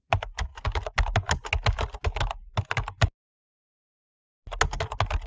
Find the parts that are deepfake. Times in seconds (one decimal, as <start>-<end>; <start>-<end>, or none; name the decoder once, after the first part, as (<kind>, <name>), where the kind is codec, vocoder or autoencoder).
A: none